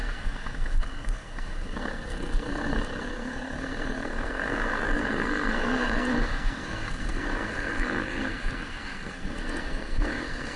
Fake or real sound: fake